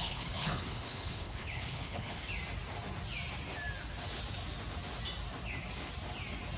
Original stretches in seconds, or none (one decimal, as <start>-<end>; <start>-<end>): 2.3-6.6